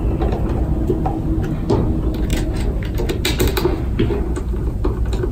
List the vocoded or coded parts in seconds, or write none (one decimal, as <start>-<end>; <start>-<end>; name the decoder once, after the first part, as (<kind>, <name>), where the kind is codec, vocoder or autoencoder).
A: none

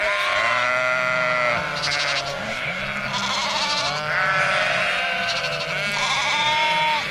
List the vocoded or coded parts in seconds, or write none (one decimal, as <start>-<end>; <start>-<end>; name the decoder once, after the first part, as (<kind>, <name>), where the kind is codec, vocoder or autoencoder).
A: 2.3-2.8 (codec, DAC)

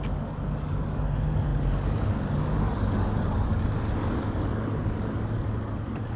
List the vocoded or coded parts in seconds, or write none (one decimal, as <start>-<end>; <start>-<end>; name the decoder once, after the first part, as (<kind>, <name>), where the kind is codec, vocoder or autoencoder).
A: 0.0-6.2 (codec, DAC)

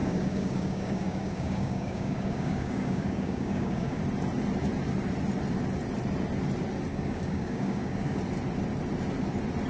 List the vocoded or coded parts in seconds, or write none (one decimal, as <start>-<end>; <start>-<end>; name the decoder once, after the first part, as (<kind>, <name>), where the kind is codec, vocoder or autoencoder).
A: 0.0-4.0 (codec, DAC); 6.9-8.2